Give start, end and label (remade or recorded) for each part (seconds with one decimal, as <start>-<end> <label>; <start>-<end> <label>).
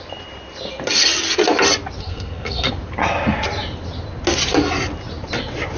0.0-2.0 recorded; 2.0-2.7 remade; 2.7-5.8 recorded